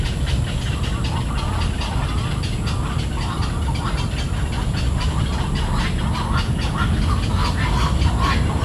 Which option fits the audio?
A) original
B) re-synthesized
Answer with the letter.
A